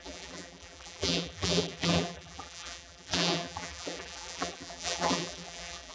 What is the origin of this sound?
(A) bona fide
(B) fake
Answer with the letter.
B